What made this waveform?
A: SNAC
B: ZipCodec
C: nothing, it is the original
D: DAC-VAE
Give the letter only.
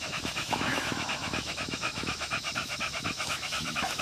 D